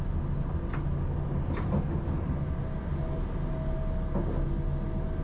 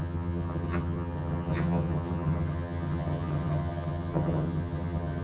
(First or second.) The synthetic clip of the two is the second